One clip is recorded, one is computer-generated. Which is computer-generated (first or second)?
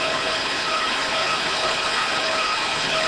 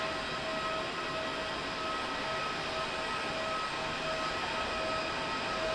first